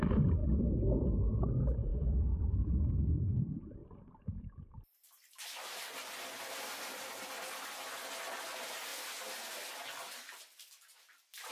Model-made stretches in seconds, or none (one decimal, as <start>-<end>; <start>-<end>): 0.4-1.3; 1.9-2.6; 3.8-6.8